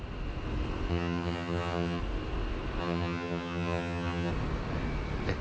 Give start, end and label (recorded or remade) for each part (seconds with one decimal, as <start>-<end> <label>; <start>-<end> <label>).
0.0-0.9 recorded; 0.9-2.0 remade; 2.0-2.8 recorded; 2.8-4.3 remade; 4.3-5.4 recorded